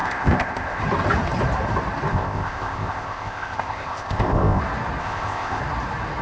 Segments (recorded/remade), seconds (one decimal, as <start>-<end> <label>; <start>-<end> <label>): 0.0-0.8 remade; 0.8-2.1 recorded; 2.1-4.6 remade; 4.6-5.0 recorded; 5.0-5.6 remade; 5.6-6.2 recorded